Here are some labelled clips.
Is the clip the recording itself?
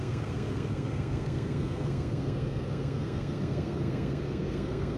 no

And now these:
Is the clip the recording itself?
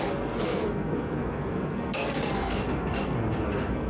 no